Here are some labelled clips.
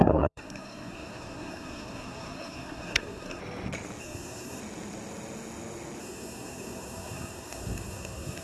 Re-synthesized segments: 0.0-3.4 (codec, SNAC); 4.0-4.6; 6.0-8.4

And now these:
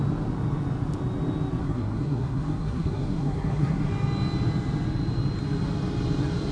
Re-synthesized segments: 1.6-3.9 (codec, SNAC)